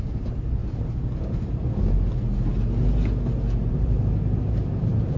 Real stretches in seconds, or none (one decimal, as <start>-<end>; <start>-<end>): 0.6-3.7